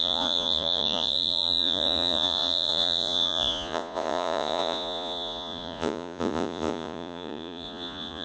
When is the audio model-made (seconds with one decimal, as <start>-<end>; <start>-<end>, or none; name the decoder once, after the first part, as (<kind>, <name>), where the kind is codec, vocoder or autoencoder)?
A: 0.0-8.2 (vocoder, Vocos)